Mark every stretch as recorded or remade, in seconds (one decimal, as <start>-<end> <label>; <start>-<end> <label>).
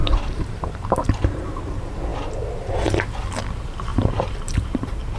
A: 0.0-1.7 remade; 1.7-3.9 recorded; 3.9-5.2 remade